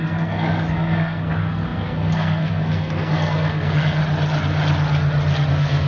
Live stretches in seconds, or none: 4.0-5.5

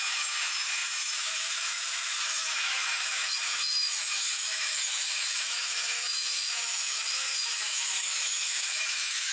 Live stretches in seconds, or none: none

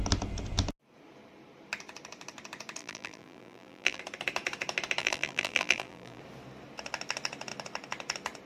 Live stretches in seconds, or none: 0.0-2.8; 4.0-5.0; 6.2-8.5